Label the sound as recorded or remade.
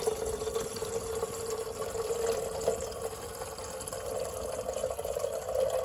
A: recorded